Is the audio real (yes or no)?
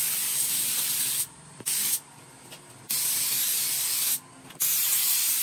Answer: yes